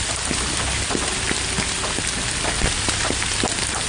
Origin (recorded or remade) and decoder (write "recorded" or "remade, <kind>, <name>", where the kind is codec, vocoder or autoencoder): recorded